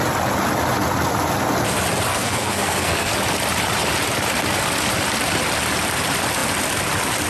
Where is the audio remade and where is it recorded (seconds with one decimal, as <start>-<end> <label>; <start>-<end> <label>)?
0.0-2.1 recorded; 2.1-3.1 remade; 3.1-7.3 recorded

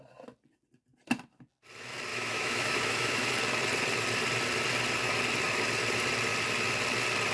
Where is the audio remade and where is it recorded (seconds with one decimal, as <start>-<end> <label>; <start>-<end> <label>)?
0.0-2.1 recorded; 2.1-3.3 remade; 3.3-7.3 recorded

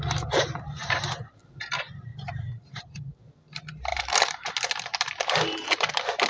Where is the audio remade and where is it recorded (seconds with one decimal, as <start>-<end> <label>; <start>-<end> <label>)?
0.0-0.8 recorded; 0.8-1.4 remade; 1.4-2.1 recorded; 2.1-2.8 remade; 2.8-3.9 recorded; 3.9-4.5 remade; 4.5-6.3 recorded

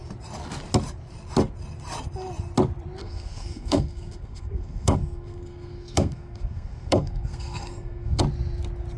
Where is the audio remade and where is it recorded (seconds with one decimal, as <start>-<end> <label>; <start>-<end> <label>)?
0.0-3.0 recorded; 3.0-8.2 remade; 8.2-9.0 recorded

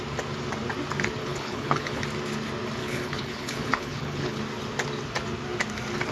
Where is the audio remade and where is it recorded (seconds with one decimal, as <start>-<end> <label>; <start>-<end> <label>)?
0.0-1.2 recorded; 1.2-2.0 remade; 2.0-2.8 recorded; 2.8-4.4 remade; 4.4-6.1 recorded

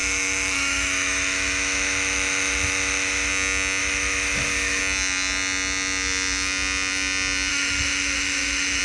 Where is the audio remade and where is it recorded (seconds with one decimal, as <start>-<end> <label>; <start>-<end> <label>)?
0.0-3.3 remade; 3.3-3.8 recorded; 3.8-4.8 remade; 4.8-7.5 recorded; 7.5-8.8 remade

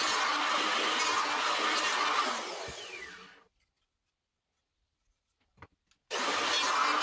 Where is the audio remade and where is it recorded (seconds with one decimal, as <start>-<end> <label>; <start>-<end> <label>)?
0.0-6.0 recorded; 6.0-6.6 remade; 6.6-7.0 recorded

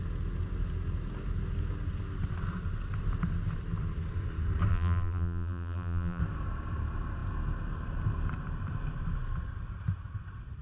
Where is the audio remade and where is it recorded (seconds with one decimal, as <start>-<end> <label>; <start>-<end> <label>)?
0.0-4.7 recorded; 4.7-6.2 remade; 6.2-10.6 recorded